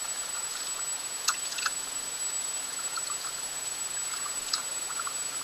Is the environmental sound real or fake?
fake